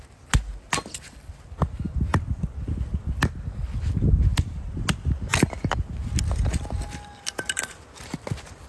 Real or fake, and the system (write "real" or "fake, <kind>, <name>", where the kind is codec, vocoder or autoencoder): real